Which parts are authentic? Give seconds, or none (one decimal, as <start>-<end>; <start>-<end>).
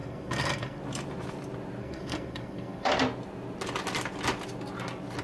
0.8-1.8; 2.9-5.2